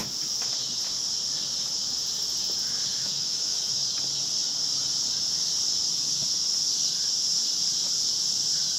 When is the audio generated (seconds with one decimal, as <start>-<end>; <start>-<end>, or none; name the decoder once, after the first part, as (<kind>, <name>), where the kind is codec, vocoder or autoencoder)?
3.0-3.7 (autoencoder, DAC-VAE)